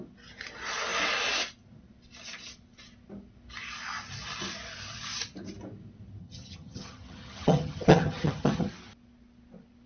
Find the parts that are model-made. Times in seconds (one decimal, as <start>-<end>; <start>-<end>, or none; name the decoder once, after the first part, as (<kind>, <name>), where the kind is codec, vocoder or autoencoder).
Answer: 6.2-8.7 (vocoder, HiFi-GAN)